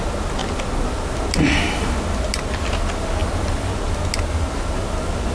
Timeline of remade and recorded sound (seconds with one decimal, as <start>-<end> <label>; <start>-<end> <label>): 0.0-3.2 recorded; 3.2-3.7 remade; 3.7-5.3 recorded